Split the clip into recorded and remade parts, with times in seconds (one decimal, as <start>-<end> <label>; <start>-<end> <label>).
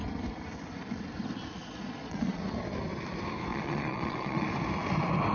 0.0-1.6 recorded; 1.6-2.4 remade; 2.4-3.5 recorded; 3.5-4.5 remade; 4.5-5.3 recorded